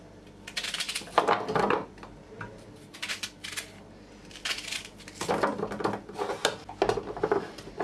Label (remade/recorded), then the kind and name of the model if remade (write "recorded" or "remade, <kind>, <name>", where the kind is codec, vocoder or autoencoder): recorded